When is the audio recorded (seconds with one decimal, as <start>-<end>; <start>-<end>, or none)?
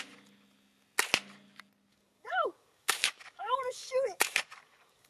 0.0-1.9